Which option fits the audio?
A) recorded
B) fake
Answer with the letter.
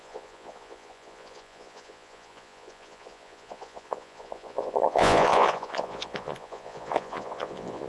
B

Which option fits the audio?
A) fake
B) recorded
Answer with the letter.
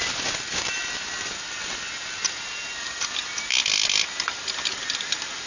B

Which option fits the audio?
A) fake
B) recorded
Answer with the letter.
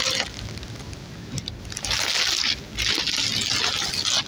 B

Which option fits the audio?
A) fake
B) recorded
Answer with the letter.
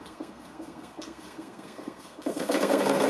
A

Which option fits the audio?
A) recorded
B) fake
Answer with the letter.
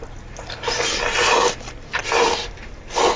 A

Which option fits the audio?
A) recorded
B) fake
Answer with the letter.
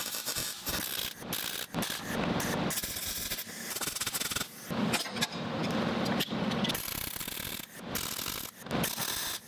A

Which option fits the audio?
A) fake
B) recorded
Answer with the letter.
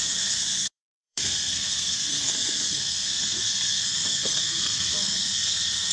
A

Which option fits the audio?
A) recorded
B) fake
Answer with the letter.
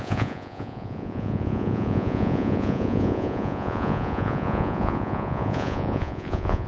B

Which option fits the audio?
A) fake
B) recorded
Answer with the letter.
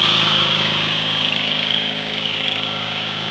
A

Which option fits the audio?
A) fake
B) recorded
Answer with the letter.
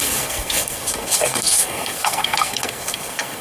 A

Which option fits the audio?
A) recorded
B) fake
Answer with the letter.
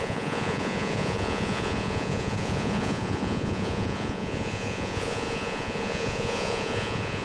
B